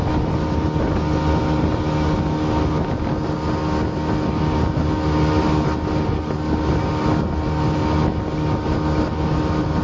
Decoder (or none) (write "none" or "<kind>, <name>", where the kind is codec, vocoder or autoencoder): none